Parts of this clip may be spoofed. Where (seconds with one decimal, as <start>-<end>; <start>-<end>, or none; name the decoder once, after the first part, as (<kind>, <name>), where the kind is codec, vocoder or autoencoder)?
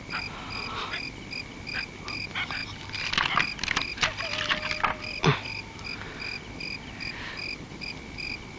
none